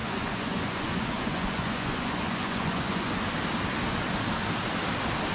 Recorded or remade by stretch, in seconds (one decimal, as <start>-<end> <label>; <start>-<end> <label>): 0.0-3.2 remade; 3.2-5.3 recorded